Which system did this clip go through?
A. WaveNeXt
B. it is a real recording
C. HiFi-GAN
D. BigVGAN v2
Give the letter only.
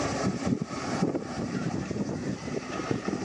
D